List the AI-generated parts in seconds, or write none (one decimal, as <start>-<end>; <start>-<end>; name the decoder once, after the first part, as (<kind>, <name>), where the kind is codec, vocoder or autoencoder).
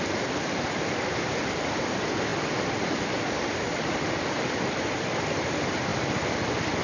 0.0-6.8 (vocoder, BigVGAN v2)